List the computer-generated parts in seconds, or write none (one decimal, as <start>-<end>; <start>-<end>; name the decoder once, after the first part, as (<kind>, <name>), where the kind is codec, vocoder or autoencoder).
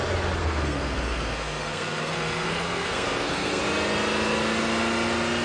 0.4-3.6 (codec, SNAC)